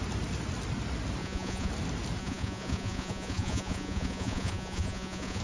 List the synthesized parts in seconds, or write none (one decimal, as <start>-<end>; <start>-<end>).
1.2-1.7; 2.2-5.4